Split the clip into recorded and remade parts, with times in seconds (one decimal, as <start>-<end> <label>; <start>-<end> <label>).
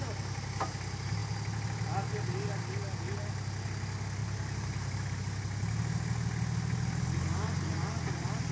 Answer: 0.0-4.2 recorded; 4.2-5.2 remade; 5.2-8.5 recorded